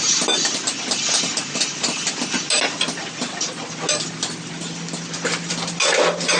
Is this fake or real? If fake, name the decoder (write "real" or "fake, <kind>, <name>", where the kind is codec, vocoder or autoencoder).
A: real